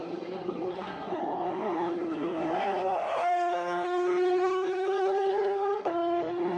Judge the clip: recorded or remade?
remade